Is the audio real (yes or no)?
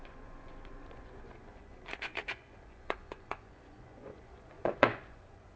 no